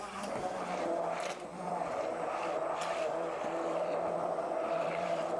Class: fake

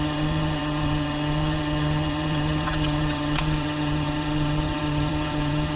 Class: fake